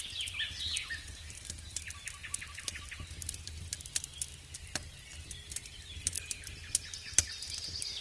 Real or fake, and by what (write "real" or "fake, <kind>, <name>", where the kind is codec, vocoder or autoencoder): real